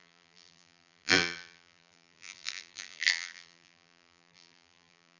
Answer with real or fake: fake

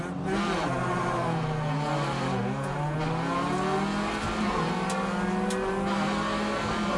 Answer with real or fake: real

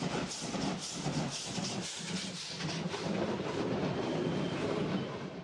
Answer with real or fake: real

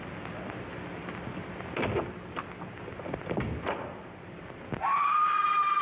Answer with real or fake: fake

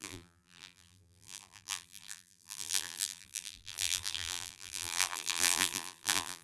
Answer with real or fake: fake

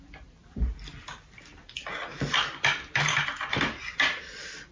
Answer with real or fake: real